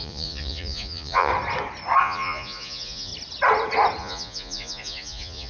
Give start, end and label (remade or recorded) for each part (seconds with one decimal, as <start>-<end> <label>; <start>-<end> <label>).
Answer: 0.0-1.3 remade; 1.3-2.0 recorded; 2.0-3.1 remade; 3.1-4.0 recorded; 4.0-5.5 remade